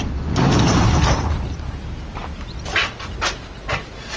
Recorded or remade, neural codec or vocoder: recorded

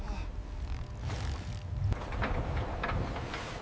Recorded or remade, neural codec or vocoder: recorded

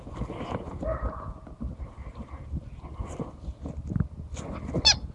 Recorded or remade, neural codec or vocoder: recorded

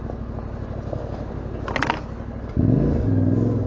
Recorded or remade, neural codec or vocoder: recorded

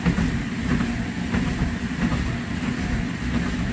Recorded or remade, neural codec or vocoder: recorded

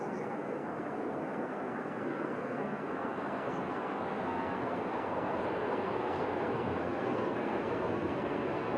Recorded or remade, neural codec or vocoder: remade, codec, SNAC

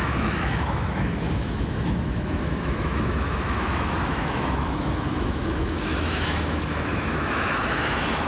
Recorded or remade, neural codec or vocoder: remade, autoencoder, DAC-VAE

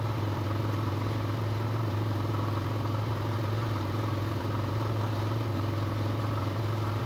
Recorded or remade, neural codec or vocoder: remade, vocoder, BigVGAN v2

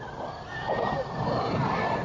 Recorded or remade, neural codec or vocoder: recorded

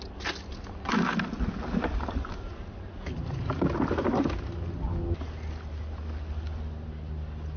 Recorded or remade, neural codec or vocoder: recorded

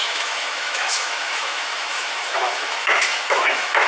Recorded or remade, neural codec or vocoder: remade, autoencoder, DAC-VAE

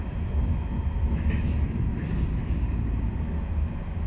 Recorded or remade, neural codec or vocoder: recorded